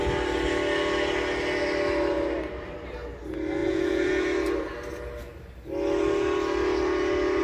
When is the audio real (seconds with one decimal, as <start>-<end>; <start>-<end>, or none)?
0.0-3.6; 4.2-7.4